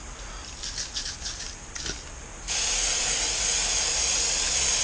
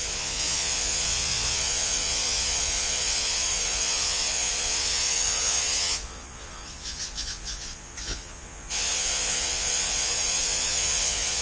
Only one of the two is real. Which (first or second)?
first